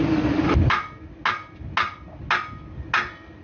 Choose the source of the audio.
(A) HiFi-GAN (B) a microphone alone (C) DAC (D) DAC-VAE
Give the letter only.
B